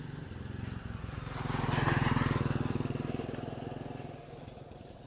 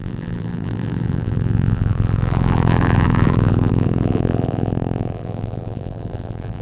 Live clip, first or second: first